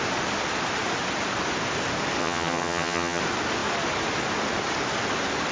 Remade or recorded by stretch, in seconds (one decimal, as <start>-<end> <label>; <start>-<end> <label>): 0.0-2.2 recorded; 2.2-3.2 remade; 3.2-5.5 recorded